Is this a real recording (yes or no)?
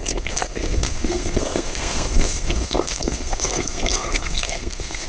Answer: no